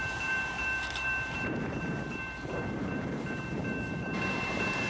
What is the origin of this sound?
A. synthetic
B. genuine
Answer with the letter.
A